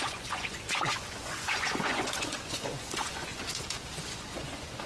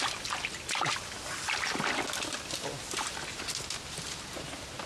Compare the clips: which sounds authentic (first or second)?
second